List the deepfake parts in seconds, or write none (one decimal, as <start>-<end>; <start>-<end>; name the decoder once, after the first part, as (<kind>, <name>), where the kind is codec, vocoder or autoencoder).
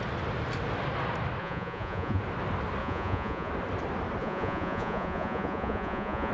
1.4-2.2 (vocoder, Vocos); 2.8-3.5; 4.2-6.3